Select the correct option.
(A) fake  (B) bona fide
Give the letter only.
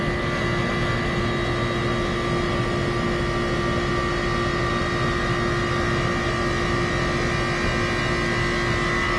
B